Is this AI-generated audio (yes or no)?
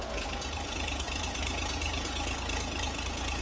yes